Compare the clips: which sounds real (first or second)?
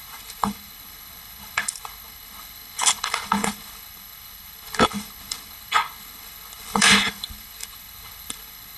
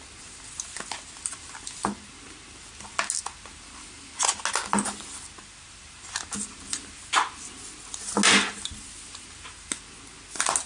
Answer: second